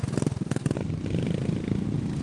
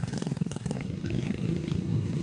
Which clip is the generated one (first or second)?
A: second